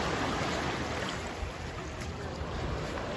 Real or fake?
real